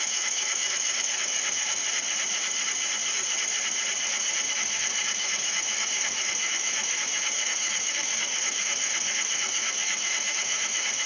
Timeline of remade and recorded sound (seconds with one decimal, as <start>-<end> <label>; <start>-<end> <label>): 0.0-1.8 remade; 1.8-4.5 recorded; 4.5-11.1 remade